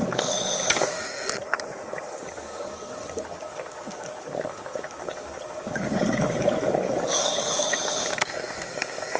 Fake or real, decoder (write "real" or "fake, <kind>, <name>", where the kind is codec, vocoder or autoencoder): fake, codec, DAC